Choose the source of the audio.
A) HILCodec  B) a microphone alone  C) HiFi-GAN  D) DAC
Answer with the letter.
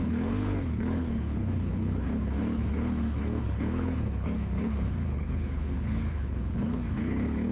A